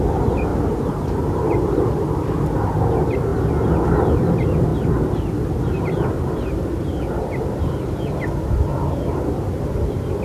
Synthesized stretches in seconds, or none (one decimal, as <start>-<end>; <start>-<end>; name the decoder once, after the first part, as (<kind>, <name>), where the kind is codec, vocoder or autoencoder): 0.5-1.7 (vocoder, BigVGAN v2)